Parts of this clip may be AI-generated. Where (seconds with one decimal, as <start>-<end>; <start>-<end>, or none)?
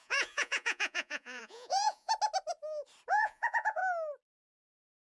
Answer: 0.0-2.1; 3.1-3.8